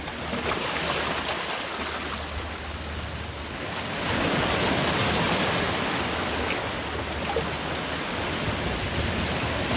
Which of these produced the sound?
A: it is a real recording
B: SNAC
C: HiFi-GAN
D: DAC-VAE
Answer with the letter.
A